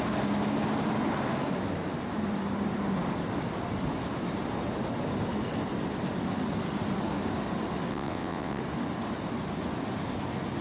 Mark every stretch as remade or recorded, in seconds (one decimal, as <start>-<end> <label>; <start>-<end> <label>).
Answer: 0.0-7.9 recorded; 7.9-8.6 remade; 8.6-10.6 recorded